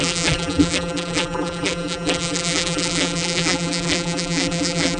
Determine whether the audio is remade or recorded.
remade